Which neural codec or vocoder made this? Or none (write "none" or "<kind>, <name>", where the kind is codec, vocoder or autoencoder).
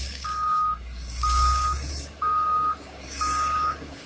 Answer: codec, DAC